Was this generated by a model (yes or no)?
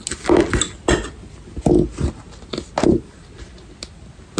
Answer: no